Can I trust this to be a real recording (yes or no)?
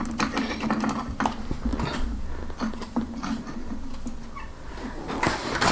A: yes